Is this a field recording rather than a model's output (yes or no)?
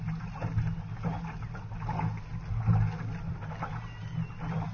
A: yes